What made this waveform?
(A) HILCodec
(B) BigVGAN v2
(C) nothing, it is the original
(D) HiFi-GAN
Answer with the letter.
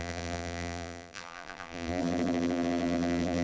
B